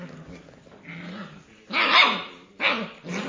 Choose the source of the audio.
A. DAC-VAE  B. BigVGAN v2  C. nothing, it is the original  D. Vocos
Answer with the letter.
C